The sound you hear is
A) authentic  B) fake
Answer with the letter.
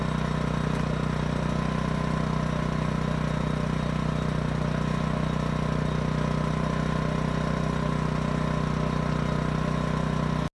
A